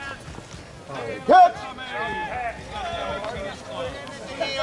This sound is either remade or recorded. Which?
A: recorded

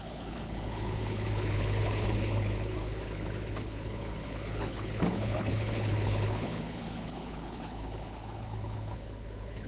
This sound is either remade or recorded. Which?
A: remade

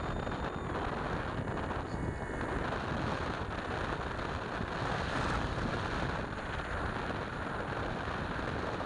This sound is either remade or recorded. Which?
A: recorded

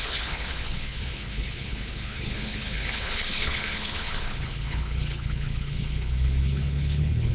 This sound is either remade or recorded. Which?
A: remade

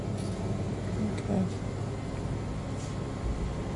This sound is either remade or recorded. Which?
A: recorded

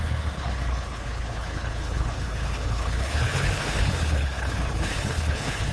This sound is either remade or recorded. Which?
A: remade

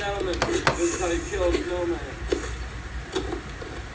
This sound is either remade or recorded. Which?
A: recorded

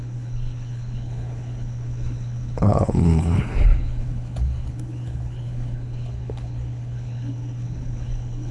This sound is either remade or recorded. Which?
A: remade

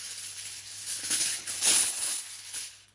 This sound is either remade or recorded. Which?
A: remade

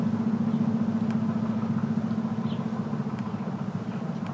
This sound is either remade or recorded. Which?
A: recorded